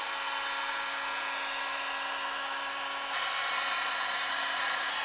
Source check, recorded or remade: recorded